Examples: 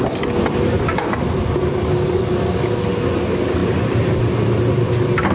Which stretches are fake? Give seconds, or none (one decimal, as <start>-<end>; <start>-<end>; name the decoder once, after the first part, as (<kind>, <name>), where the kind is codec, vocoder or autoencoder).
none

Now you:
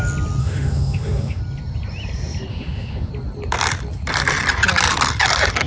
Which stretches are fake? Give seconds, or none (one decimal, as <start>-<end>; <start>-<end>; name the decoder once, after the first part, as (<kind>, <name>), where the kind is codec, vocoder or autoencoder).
0.4-1.4 (autoencoder, DAC-VAE); 2.5-3.1

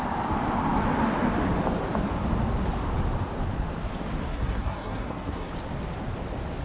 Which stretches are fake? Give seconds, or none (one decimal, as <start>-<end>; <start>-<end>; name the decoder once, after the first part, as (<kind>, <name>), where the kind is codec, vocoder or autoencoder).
4.2-5.5 (codec, SNAC)